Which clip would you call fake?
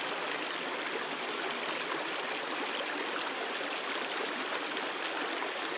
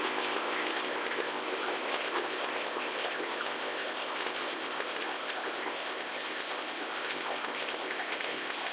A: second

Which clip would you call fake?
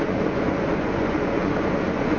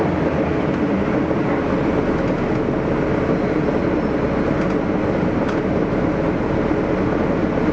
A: first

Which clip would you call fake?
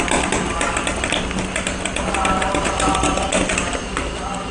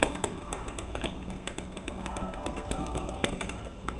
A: second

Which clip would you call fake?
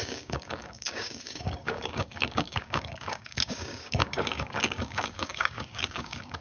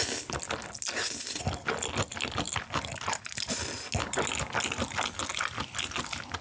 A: first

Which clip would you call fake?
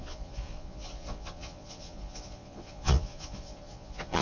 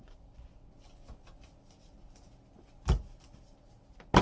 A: first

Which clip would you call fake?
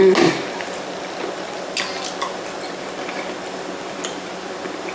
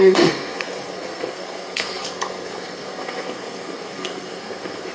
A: second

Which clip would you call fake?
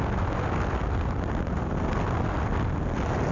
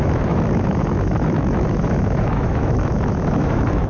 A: second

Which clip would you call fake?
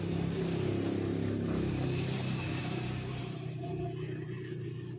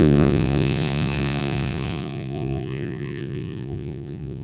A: second